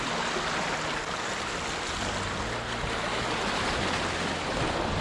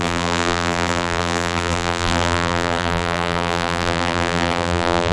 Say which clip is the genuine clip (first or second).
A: first